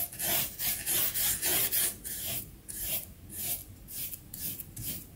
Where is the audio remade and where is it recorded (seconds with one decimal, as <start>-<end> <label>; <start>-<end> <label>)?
0.0-1.5 recorded; 1.5-3.2 remade; 3.2-5.2 recorded